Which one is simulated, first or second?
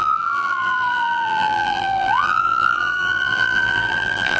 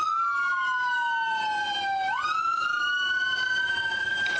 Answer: first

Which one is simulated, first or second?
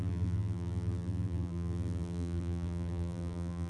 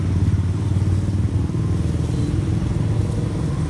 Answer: first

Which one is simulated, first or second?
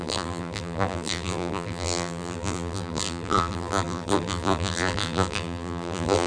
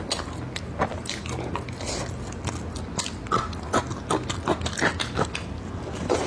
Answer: first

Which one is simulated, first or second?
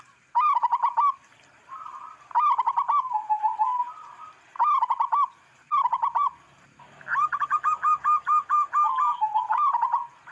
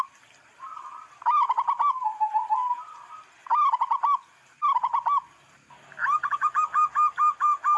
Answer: first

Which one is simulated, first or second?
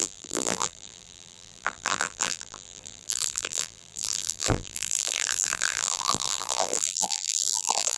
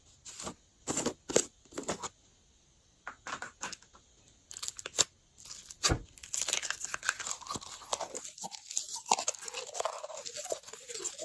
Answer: first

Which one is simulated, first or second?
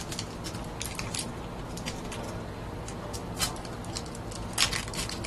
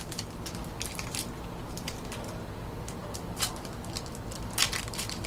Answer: second